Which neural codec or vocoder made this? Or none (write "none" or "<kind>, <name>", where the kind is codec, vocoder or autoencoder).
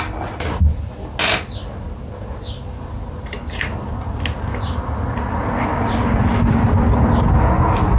none